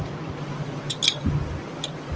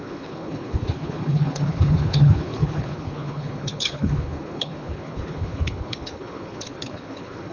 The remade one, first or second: second